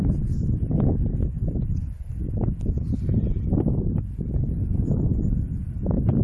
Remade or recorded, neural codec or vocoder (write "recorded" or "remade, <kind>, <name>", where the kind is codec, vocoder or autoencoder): remade, vocoder, BigVGAN v2